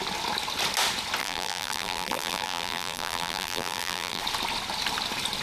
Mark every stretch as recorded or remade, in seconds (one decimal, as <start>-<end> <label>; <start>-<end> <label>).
0.0-1.2 recorded; 1.2-4.2 remade; 4.2-5.4 recorded